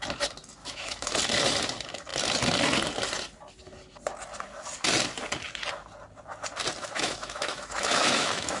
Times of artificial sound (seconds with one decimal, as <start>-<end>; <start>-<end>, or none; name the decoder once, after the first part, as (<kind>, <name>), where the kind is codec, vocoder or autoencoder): 0.6-1.1 (autoencoder, DAC-VAE); 6.8-8.6